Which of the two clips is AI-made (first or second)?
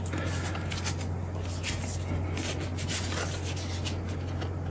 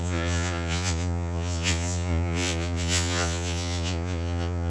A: second